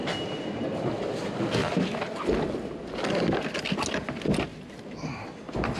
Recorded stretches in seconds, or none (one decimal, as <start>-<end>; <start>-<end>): 0.0-4.5